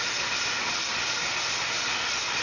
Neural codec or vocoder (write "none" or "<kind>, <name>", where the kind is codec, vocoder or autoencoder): none